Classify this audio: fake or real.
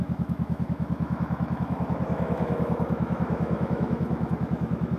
fake